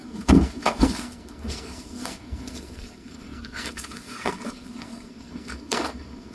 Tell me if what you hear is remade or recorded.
remade